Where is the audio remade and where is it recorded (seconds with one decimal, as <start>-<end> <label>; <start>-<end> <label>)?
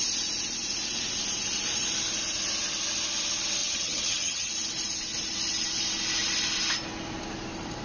0.0-3.6 recorded; 3.6-4.5 remade; 4.5-7.8 recorded